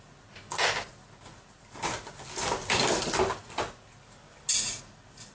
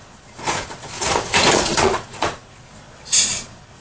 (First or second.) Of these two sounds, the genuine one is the first